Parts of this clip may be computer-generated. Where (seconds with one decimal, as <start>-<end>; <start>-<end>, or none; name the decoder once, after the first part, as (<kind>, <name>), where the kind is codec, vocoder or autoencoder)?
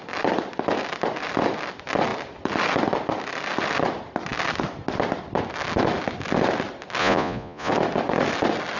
7.0-7.7 (vocoder, Vocos)